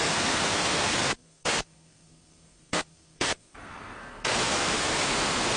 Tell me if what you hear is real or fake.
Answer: fake